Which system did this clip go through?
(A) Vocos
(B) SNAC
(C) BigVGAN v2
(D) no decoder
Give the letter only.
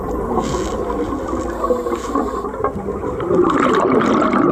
D